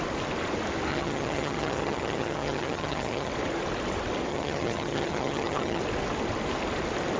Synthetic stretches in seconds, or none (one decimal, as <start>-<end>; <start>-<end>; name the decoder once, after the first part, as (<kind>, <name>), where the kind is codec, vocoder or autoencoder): 0.9-3.3 (vocoder, HiFi-GAN); 4.3-5.8